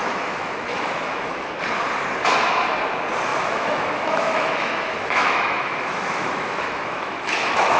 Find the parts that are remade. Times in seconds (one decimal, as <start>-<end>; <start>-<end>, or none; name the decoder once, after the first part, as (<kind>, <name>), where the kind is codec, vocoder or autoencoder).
0.0-1.6 (autoencoder, DAC-VAE); 3.3-7.8